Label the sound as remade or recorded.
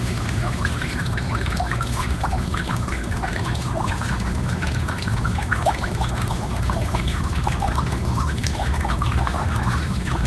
remade